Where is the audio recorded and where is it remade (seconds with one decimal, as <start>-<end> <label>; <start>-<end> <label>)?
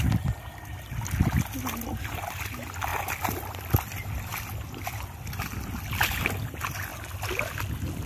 0.0-8.1 recorded